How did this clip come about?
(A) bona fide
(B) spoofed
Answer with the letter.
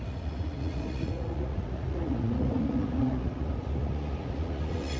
B